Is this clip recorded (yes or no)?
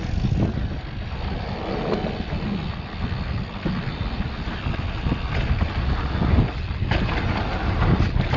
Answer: yes